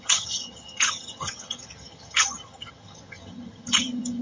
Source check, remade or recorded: remade